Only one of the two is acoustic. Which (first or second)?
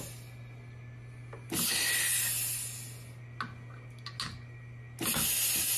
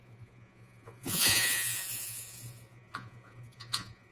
first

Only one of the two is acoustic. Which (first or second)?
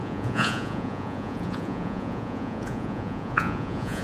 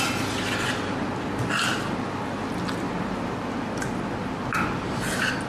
second